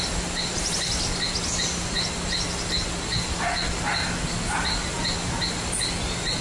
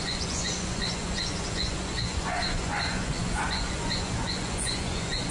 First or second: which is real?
first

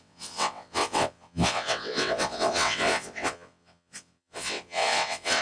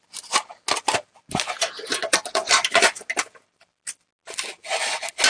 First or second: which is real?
second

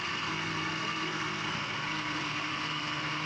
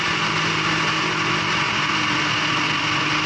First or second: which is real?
second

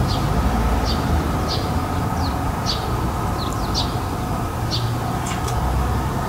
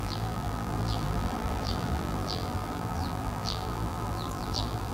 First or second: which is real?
first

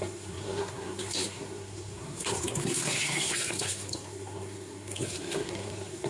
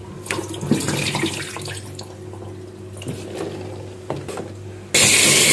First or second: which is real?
second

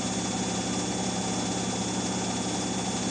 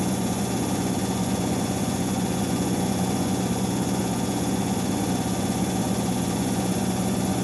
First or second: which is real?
first